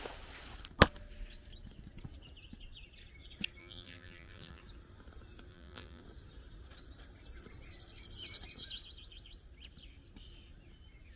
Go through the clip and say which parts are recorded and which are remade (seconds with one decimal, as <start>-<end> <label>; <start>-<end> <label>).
0.0-3.6 recorded; 3.6-4.6 remade; 4.6-5.5 recorded; 5.5-6.0 remade; 6.0-11.2 recorded